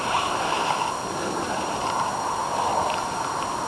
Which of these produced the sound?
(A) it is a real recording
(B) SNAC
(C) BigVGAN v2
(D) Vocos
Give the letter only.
A